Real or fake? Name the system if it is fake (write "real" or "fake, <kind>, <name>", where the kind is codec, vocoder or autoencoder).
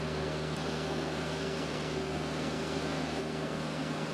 fake, codec, SNAC